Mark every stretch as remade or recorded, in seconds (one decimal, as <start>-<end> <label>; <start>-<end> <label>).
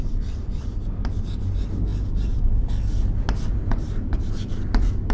0.0-5.1 recorded